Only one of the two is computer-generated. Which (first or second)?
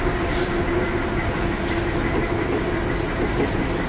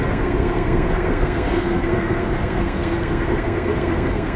second